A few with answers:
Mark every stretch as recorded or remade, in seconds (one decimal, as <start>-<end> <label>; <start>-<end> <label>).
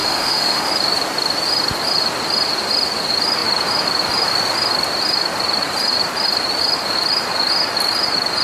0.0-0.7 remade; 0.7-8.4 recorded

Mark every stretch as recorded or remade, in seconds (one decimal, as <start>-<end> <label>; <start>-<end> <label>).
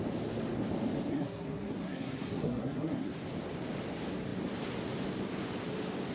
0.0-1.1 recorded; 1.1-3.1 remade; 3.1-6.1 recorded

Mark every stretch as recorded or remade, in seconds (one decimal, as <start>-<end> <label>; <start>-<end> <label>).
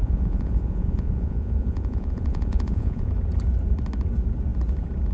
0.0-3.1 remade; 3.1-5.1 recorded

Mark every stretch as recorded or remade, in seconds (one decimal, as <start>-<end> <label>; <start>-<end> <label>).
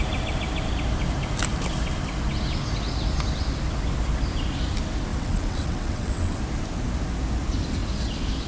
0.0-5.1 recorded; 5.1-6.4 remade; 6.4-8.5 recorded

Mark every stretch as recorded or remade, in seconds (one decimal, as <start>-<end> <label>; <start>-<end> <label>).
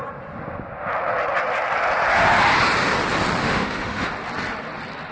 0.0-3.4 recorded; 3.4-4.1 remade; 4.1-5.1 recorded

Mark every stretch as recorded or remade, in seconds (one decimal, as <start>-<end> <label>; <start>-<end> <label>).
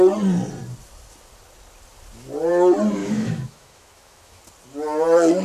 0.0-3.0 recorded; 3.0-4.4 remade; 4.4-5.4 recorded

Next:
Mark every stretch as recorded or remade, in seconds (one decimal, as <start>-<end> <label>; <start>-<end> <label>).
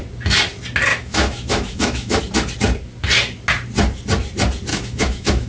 0.0-0.9 recorded; 0.9-2.2 remade; 2.2-4.7 recorded; 4.7-5.5 remade